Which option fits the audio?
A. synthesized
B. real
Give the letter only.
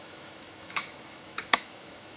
A